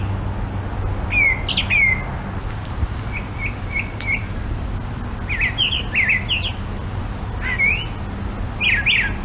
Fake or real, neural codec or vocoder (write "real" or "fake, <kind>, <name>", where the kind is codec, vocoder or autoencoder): real